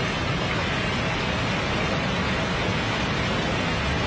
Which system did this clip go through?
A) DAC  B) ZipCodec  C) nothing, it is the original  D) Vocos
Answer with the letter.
C